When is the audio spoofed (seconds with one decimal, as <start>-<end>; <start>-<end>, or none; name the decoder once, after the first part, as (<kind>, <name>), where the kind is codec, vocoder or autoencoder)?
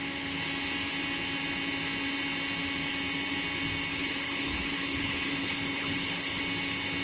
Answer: 3.9-6.4 (codec, HILCodec)